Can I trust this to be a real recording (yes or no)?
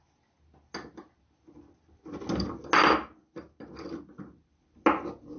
yes